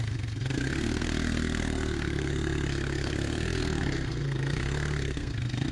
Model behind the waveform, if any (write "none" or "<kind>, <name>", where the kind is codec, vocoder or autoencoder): codec, SNAC